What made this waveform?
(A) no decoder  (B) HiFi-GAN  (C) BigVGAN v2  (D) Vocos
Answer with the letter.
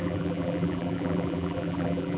C